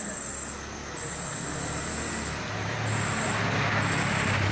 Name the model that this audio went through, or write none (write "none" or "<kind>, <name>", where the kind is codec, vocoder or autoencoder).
none